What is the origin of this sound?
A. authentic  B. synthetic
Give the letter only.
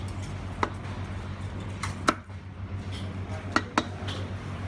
A